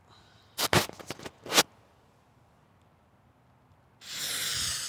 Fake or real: real